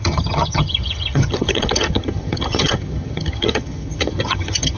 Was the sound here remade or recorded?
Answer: remade